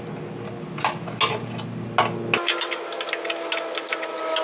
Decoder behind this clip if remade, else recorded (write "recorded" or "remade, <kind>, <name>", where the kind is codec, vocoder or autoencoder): recorded